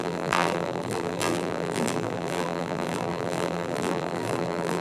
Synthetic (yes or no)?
yes